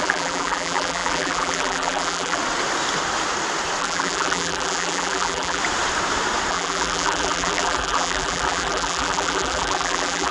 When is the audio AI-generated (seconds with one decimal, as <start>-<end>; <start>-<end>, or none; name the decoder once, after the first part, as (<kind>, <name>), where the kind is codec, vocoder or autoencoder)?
0.0-2.4 (vocoder, BigVGAN v2); 3.8-5.6; 6.5-10.3